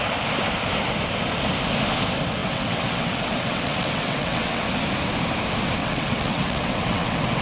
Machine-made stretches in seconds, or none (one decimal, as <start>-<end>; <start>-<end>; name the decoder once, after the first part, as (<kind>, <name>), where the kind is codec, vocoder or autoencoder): 2.4-4.6 (vocoder, WaveNeXt); 5.8-7.4